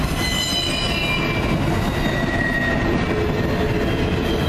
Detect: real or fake real